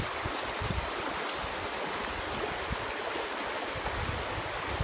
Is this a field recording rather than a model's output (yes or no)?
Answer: yes